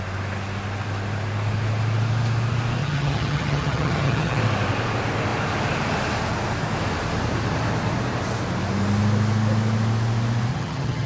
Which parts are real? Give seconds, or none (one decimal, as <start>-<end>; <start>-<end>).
0.0-2.8; 4.4-10.5